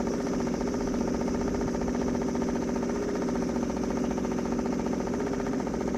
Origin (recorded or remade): recorded